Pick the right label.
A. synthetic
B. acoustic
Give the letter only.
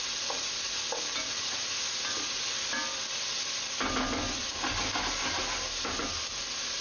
B